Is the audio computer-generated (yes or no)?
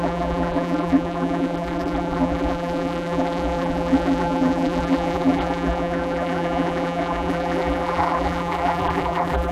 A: yes